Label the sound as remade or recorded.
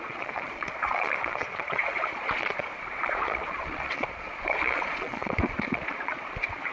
remade